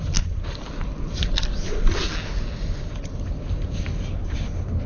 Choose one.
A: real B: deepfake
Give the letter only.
A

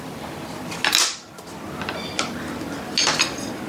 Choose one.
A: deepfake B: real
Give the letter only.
B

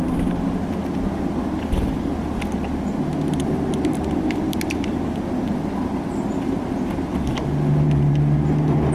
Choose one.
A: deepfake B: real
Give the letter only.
B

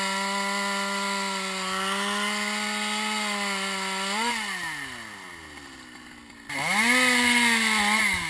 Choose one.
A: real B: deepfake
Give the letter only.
A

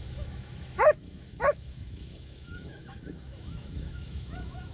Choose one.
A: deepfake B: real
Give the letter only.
A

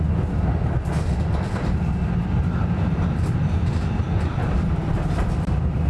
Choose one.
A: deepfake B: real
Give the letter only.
A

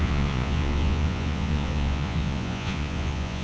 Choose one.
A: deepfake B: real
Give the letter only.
A